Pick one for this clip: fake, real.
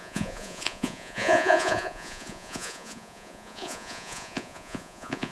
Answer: fake